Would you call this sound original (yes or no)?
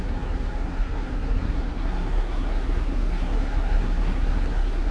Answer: no